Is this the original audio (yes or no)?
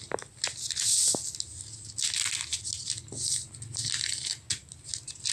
yes